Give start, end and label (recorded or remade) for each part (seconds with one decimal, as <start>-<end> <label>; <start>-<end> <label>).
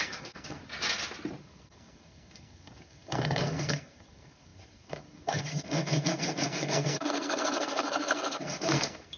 0.0-0.6 remade; 0.6-1.4 recorded; 1.4-9.2 remade